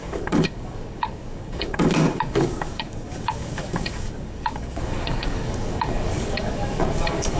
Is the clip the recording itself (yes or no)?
no